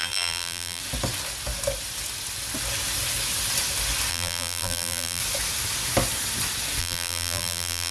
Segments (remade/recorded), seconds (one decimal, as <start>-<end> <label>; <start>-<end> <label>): 0.0-0.8 remade; 0.8-4.1 recorded; 4.1-5.2 remade; 5.2-6.8 recorded; 6.8-7.9 remade